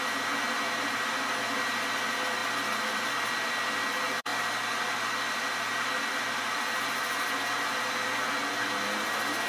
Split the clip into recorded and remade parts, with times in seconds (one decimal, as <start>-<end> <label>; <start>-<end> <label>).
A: 0.0-9.5 recorded